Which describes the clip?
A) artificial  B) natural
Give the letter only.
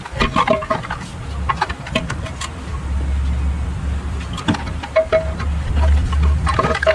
B